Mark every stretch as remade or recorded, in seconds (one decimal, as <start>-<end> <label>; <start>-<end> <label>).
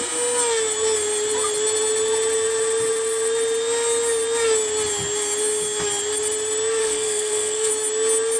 0.0-6.8 recorded; 6.8-7.7 remade; 7.7-8.4 recorded